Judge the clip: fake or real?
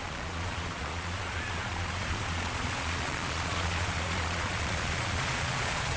fake